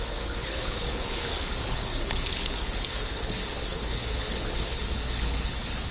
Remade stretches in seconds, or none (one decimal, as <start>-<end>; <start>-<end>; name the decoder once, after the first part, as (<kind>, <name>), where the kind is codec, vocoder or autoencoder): 0.0-5.9 (codec, HILCodec)

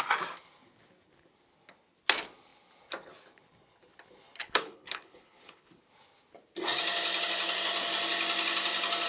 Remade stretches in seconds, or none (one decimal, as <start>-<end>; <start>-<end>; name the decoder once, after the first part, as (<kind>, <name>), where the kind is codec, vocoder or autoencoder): 4.4-5.8 (codec, HILCodec)

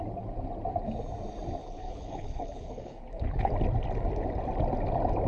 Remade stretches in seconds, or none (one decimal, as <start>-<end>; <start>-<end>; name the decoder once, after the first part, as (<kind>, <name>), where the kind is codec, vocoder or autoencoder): 1.6-3.5 (codec, HILCodec)

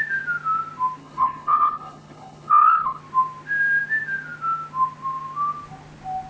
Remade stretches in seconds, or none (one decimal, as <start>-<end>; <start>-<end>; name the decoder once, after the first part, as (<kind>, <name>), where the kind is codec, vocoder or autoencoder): 1.0-3.0 (codec, HILCodec)